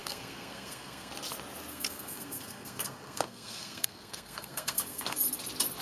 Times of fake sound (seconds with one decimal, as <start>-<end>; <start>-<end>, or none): 0.0-1.1; 1.7-5.2